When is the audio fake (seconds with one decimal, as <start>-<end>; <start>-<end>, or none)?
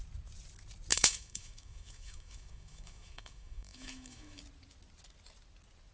0.9-4.4